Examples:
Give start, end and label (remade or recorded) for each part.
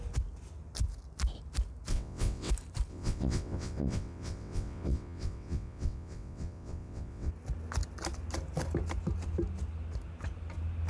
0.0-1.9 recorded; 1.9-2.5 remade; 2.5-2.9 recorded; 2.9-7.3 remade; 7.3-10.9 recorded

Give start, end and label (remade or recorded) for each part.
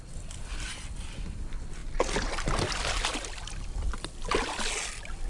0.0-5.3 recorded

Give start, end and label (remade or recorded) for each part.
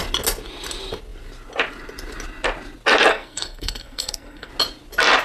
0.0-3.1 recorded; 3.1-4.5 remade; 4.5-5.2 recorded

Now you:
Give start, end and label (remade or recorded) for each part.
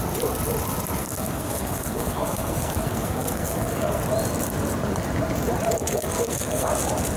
0.0-1.0 recorded; 1.0-4.0 remade; 4.0-5.8 recorded; 5.8-6.7 remade; 6.7-7.2 recorded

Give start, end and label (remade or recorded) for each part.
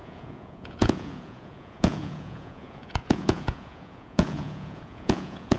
0.0-5.6 remade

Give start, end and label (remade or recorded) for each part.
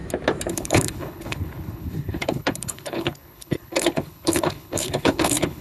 0.0-0.5 recorded; 0.5-5.6 remade